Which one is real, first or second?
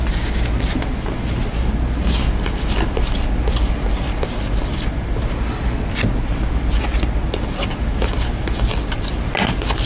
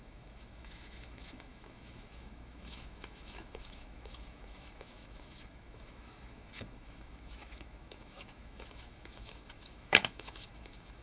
first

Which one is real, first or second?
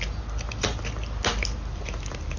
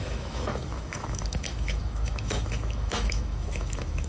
first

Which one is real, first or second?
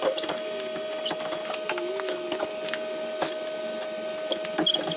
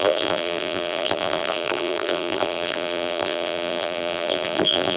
first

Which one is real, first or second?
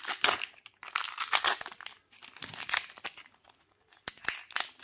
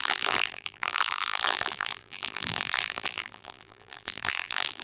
first